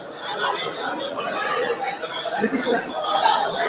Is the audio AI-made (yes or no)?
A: yes